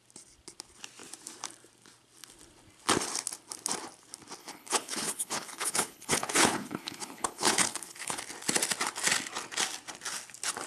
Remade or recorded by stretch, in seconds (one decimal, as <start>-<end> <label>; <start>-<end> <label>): 0.0-4.4 recorded; 4.4-8.2 remade; 8.2-10.7 recorded